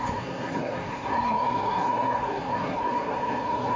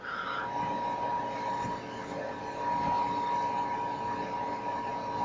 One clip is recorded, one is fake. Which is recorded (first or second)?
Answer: second